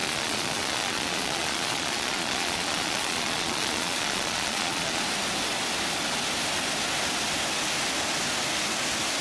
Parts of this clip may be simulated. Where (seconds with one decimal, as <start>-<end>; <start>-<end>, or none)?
0.0-5.0